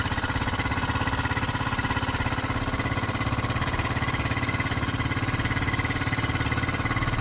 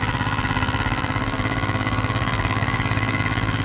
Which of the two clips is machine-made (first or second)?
second